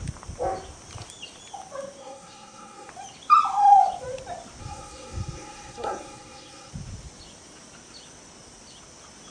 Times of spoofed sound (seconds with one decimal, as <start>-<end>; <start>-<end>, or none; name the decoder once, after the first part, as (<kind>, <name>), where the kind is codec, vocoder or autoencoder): 2.0-2.9 (codec, SNAC); 4.6-6.7